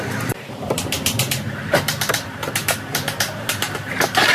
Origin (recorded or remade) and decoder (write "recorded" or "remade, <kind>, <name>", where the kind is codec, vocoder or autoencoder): remade, vocoder, BigVGAN v2